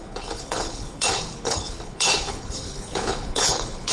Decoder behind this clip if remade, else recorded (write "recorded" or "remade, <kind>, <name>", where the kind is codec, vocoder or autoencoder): remade, codec, HILCodec